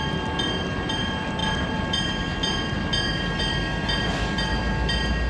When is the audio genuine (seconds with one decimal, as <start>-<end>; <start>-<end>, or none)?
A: 0.0-5.3